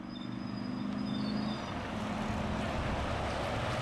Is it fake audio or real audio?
real